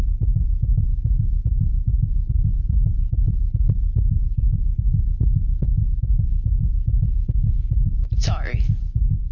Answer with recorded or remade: recorded